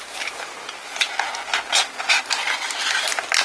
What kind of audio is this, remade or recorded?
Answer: recorded